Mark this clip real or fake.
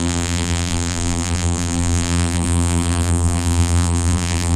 fake